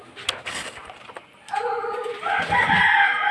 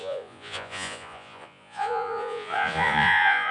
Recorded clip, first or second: first